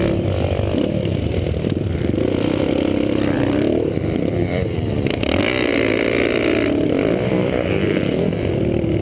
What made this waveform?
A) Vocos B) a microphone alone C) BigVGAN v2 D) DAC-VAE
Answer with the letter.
C